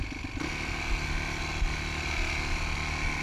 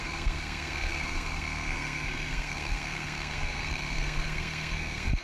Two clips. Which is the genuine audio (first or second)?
first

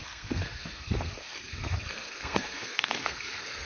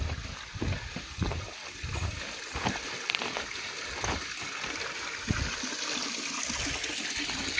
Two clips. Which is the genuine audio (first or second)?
second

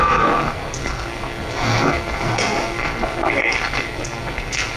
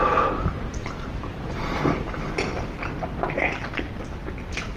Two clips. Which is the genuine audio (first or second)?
second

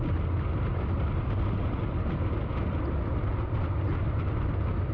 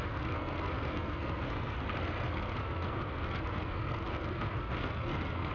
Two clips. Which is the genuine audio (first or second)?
first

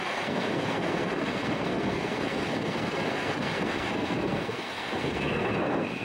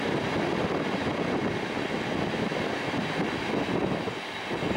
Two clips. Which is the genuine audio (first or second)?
second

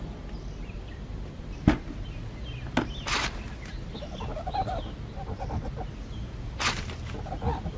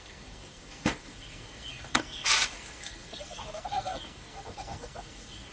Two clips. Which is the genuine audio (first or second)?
first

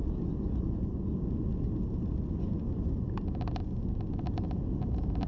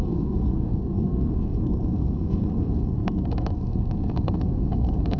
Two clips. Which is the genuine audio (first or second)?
first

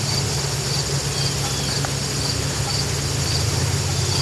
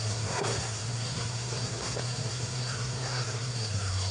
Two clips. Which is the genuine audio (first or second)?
first